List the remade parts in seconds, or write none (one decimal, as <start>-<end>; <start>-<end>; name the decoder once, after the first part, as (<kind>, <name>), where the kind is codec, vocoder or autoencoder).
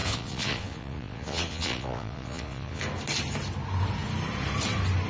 0.0-2.8 (vocoder, Vocos)